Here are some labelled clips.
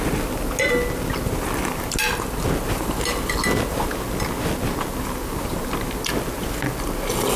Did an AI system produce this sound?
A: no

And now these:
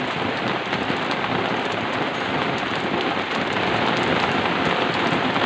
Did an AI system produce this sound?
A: yes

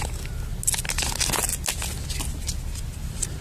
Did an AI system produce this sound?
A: no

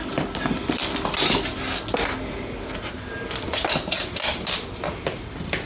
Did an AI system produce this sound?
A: no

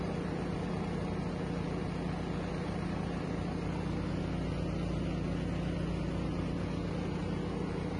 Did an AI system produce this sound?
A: no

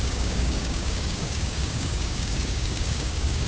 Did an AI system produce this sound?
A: yes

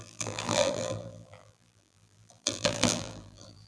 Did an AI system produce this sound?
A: yes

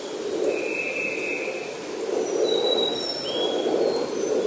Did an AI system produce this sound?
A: no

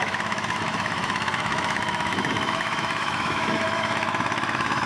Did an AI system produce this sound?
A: yes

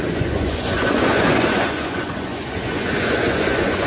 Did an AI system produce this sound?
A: yes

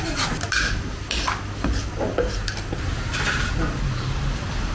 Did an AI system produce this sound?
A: no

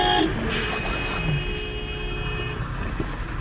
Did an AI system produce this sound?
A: no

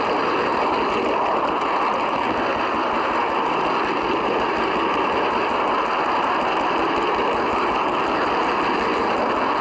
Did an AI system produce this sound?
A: no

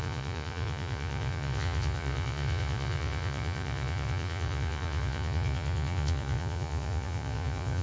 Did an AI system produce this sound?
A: yes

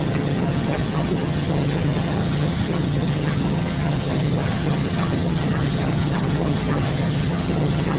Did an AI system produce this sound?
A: yes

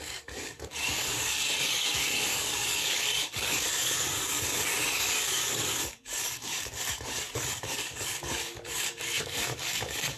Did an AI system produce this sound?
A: yes